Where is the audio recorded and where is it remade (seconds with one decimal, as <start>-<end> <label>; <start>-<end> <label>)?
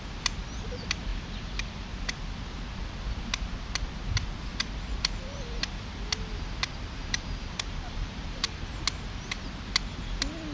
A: 0.0-1.1 recorded; 1.1-1.9 remade; 1.9-4.5 recorded; 4.5-5.6 remade; 5.6-7.0 recorded; 7.0-8.8 remade; 8.8-10.5 recorded